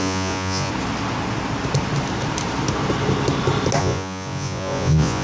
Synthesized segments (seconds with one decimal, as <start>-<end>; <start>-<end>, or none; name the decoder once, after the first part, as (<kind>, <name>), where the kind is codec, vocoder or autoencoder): 0.0-0.7 (vocoder, Vocos); 3.8-5.2